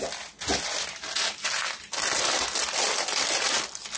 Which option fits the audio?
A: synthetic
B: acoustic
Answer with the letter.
B